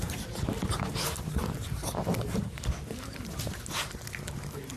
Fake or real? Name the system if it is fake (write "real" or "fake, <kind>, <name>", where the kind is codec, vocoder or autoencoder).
real